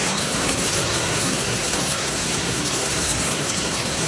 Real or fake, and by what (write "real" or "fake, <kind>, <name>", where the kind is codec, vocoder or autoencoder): fake, codec, SNAC